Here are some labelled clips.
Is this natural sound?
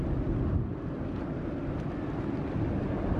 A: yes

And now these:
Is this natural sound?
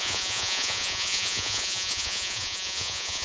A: no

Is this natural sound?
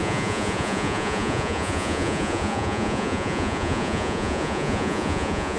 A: no